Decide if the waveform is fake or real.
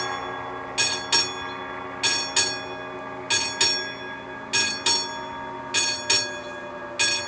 real